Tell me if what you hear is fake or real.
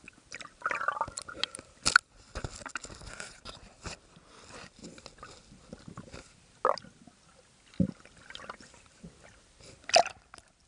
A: real